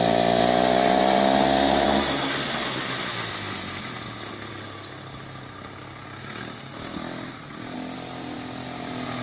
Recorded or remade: recorded